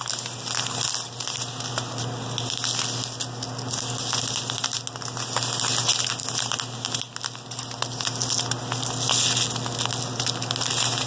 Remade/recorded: recorded